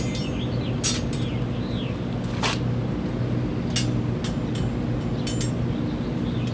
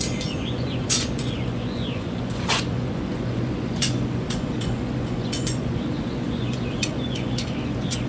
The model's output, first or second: second